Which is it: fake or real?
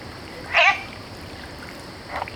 fake